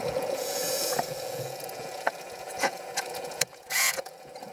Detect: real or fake fake